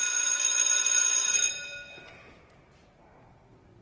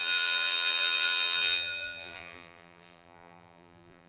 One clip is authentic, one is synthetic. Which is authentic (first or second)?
first